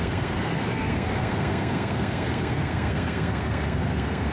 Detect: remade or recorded remade